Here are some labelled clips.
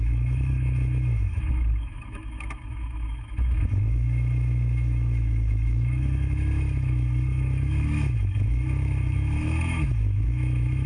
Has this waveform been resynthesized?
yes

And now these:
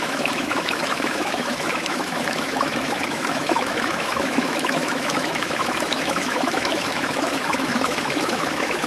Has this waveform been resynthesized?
yes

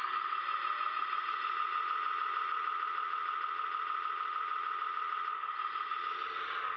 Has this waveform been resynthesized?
no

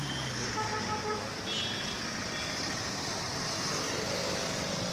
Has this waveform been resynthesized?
no